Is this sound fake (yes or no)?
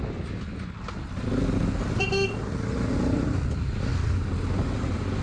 no